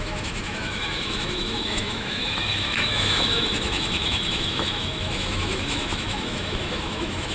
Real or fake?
fake